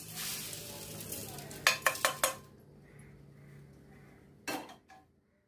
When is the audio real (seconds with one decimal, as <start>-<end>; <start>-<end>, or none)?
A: 0.0-5.5